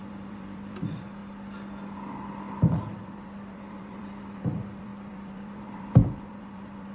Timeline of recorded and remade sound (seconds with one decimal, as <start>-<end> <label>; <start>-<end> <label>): 0.0-1.2 remade; 1.2-3.0 recorded; 3.0-6.9 remade